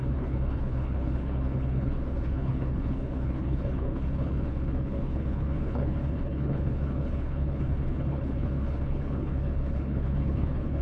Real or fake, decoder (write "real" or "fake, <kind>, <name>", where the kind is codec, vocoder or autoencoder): fake, codec, HILCodec